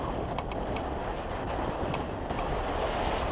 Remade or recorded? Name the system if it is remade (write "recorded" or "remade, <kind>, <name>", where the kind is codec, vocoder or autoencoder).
recorded